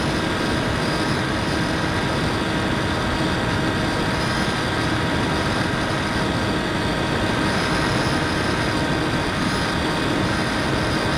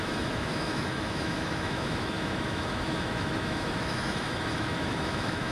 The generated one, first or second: second